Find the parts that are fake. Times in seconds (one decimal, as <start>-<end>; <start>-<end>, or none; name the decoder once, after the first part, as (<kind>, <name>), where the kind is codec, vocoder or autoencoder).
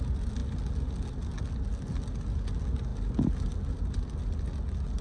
none